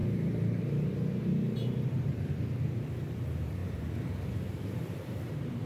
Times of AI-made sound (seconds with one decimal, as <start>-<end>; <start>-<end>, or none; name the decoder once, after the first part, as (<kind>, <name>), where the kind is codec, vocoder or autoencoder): 0.0-2.2 (vocoder, BigVGAN v2); 3.6-5.7